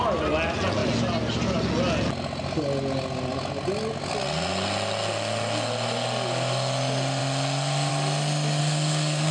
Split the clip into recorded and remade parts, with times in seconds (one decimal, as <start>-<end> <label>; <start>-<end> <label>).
0.0-8.6 recorded; 8.6-9.3 remade